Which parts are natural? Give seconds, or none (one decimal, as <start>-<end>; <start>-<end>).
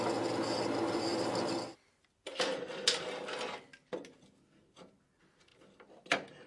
0.0-6.5